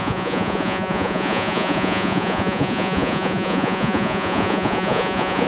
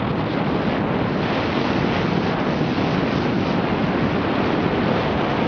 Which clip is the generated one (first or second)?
first